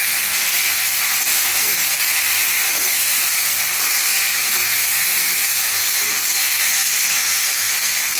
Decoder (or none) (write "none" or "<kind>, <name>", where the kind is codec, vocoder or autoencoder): codec, SNAC